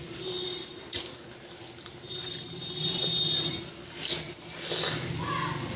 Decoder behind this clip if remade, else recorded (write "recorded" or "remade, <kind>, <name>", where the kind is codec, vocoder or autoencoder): recorded